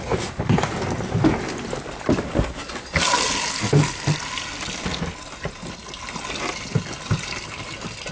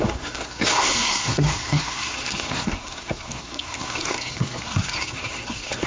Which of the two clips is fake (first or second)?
second